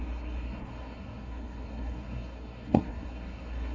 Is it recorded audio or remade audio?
remade